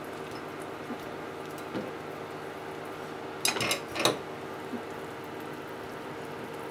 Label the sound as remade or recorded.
recorded